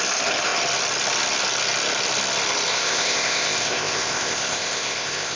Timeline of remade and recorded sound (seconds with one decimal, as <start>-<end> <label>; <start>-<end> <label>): 0.0-2.7 recorded; 2.7-5.4 remade